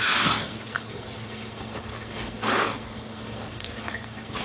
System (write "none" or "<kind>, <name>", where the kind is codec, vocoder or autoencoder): codec, SNAC